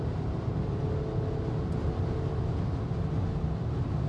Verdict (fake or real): real